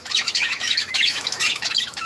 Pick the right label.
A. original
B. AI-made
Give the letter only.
B